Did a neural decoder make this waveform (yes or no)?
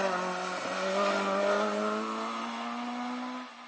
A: no